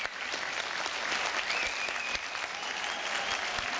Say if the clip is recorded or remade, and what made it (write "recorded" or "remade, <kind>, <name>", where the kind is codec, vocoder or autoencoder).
recorded